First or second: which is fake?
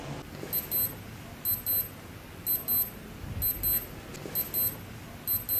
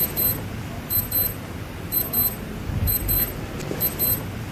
second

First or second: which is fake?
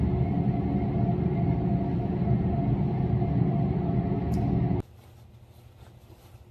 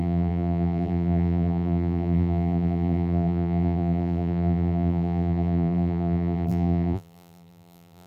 second